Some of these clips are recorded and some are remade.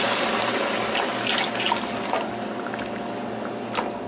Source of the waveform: recorded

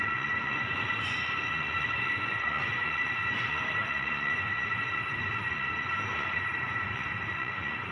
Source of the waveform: remade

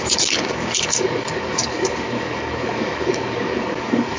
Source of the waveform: remade